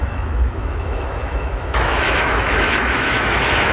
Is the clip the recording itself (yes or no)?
no